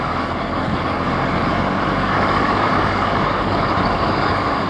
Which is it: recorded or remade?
remade